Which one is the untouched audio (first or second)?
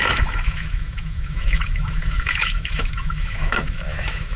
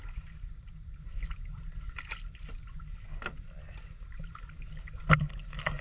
second